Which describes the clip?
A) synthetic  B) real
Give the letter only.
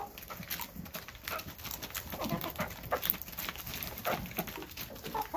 B